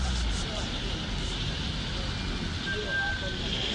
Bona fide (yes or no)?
yes